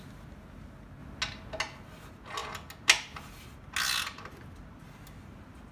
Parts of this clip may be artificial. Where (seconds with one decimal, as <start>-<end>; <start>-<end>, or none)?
none